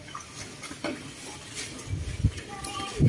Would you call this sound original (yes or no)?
yes